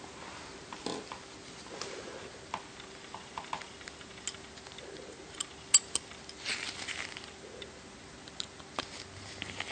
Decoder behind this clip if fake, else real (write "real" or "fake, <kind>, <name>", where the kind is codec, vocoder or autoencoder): real